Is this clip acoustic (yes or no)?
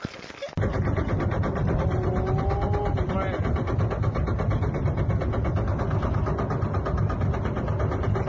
yes